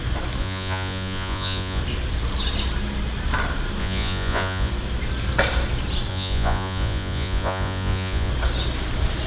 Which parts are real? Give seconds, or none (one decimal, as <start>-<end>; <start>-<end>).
0.0-0.4; 1.8-3.8; 4.7-6.1; 8.3-9.3